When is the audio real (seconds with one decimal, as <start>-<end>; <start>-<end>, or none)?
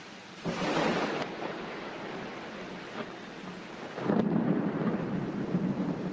0.0-6.1